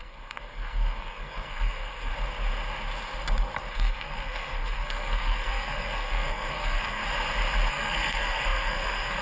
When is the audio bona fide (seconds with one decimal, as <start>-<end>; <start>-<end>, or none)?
2.1-3.7; 7.0-7.7